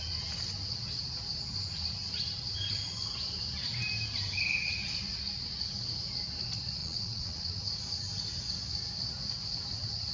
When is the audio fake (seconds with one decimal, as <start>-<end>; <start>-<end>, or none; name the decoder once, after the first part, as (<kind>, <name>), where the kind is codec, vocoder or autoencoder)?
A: 6.8-7.5 (vocoder, Vocos)